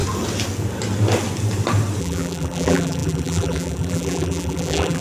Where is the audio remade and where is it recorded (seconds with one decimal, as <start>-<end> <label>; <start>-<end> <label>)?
0.0-2.0 recorded; 2.0-5.0 remade